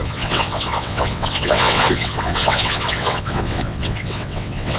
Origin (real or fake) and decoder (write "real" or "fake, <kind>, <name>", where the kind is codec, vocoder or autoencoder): fake, vocoder, WaveNeXt